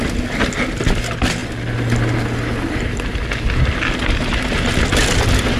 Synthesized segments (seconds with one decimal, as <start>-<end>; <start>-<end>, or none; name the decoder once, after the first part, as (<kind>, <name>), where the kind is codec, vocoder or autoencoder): none